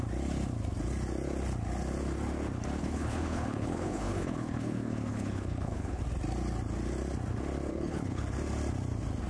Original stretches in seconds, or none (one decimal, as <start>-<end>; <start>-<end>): 0.0-2.8; 6.0-7.7; 8.2-9.3